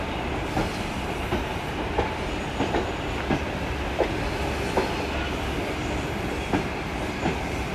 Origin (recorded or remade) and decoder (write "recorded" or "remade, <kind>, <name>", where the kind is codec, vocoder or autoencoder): recorded